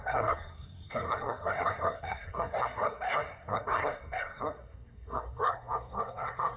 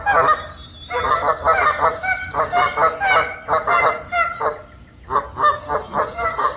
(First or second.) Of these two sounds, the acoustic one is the second